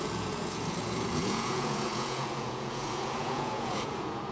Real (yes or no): no